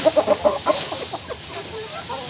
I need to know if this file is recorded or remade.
recorded